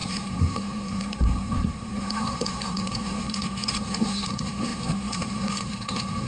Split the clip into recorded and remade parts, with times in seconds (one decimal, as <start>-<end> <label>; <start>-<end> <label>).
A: 0.0-6.3 remade